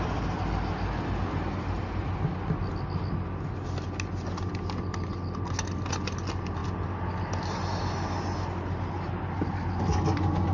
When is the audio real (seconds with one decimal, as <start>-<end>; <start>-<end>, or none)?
0.0-10.5